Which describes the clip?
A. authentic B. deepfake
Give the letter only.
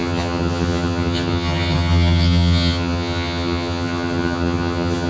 B